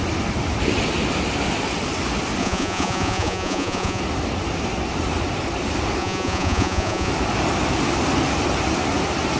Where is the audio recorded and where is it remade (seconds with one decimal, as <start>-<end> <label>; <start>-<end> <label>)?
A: 0.0-2.4 recorded; 2.4-4.0 remade; 4.0-6.0 recorded; 6.0-7.1 remade; 7.1-9.4 recorded